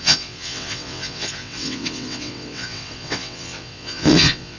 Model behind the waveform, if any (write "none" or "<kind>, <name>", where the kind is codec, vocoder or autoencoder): vocoder, WaveNeXt